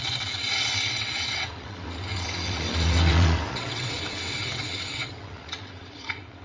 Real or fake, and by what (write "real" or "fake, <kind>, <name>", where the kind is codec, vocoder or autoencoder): fake, vocoder, WaveNeXt